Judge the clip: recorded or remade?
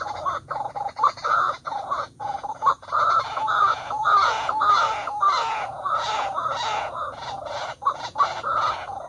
remade